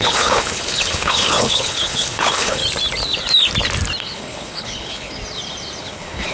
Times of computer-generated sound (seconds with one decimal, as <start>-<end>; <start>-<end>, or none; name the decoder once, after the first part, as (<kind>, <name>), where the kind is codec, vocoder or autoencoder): 0.0-2.6 (codec, HILCodec); 4.0-5.2; 5.8-6.3